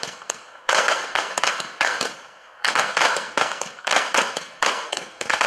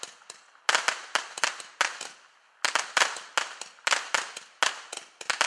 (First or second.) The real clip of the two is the second